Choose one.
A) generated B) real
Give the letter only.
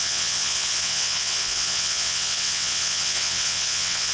A